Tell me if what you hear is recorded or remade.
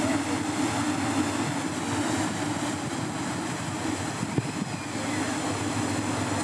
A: recorded